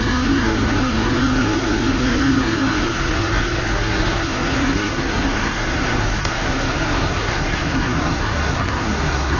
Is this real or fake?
fake